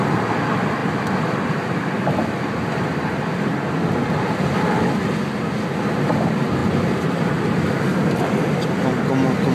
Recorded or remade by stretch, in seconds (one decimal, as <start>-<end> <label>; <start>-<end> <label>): 0.0-0.8 recorded; 0.8-4.0 remade; 4.0-9.5 recorded